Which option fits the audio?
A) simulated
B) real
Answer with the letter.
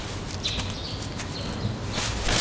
B